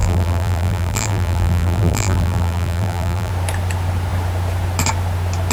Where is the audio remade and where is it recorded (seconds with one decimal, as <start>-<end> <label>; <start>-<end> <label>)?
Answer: 0.0-3.3 remade; 3.3-5.5 recorded